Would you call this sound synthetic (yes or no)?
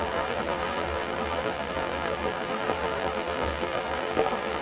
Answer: yes